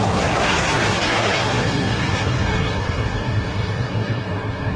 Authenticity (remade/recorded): remade